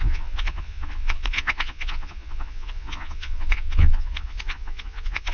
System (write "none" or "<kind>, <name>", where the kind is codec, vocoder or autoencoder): vocoder, Vocos